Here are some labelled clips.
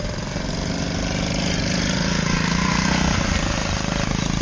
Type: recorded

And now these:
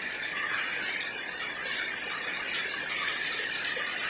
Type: recorded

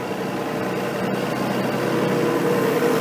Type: recorded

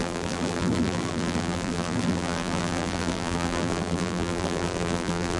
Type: remade